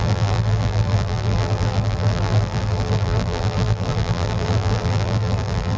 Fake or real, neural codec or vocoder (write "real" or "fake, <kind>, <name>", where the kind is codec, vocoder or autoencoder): fake, vocoder, BigVGAN v2